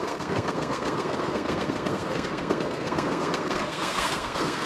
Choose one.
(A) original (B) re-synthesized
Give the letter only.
B